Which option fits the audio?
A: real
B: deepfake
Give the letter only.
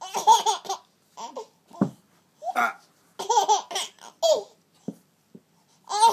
A